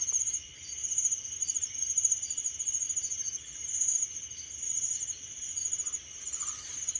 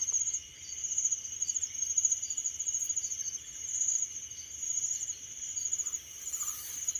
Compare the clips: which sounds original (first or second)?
first